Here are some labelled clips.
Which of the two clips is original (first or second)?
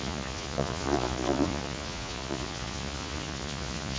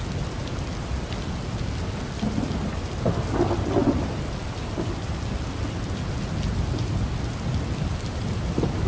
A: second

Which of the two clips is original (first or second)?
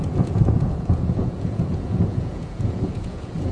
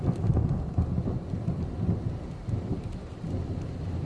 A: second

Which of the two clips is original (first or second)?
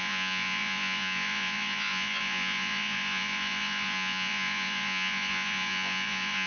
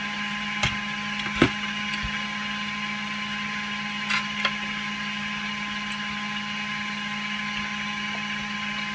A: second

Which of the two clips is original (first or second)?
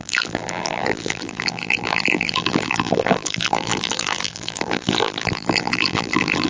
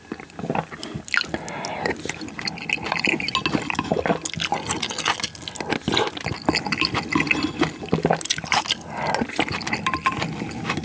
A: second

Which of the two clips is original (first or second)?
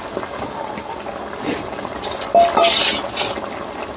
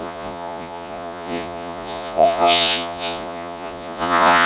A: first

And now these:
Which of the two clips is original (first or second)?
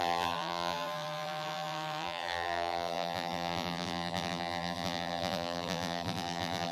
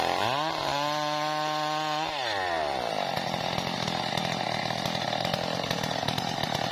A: second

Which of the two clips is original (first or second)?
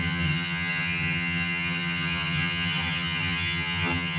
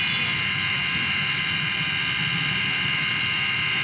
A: second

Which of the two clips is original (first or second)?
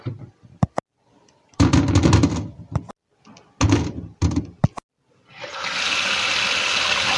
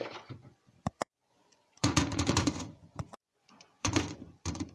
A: first